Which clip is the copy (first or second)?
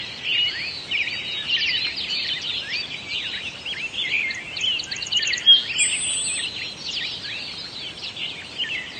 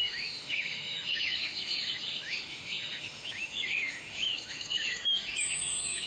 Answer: second